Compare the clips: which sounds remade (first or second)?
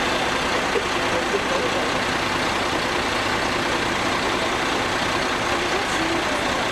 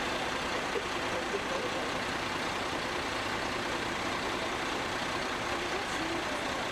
second